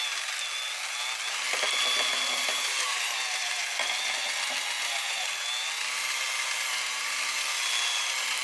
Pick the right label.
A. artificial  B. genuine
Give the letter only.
B